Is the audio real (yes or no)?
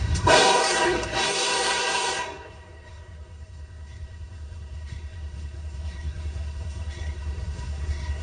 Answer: no